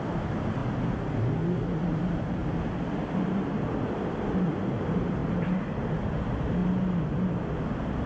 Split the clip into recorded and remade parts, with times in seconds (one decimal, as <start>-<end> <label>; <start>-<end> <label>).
0.0-0.6 remade; 0.6-1.8 recorded; 1.8-2.4 remade; 2.4-2.9 recorded; 2.9-5.2 remade; 5.2-6.0 recorded; 6.0-6.6 remade; 6.6-8.1 recorded